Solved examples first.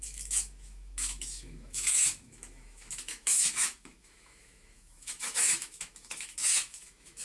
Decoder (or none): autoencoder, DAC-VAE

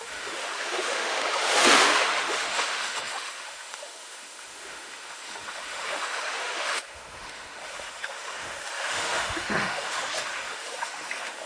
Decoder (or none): autoencoder, DAC-VAE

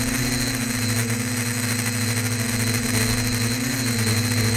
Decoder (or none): none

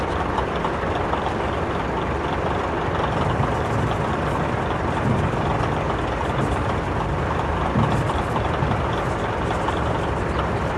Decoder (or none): none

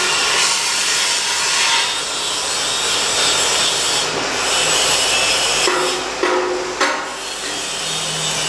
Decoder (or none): none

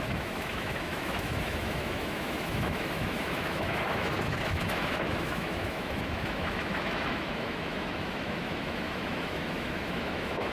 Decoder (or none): autoencoder, DAC-VAE